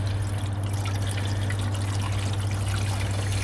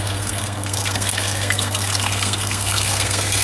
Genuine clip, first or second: first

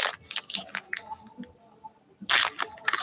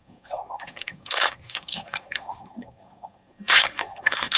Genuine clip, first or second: first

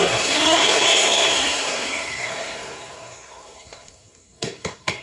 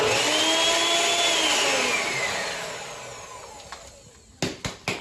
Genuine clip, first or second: second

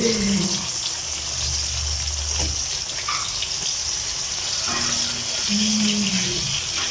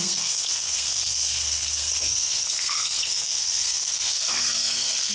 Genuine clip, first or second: first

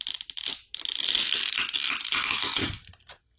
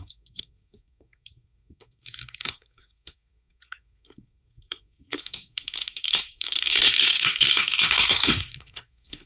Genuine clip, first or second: first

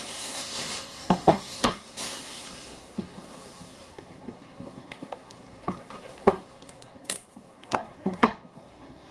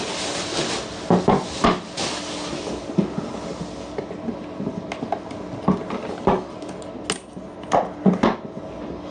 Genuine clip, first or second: second